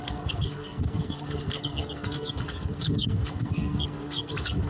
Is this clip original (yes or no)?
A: no